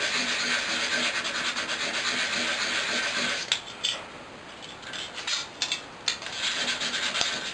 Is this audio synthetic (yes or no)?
no